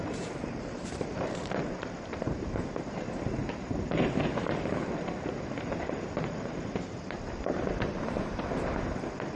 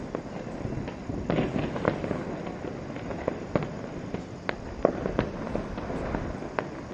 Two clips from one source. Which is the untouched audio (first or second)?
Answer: second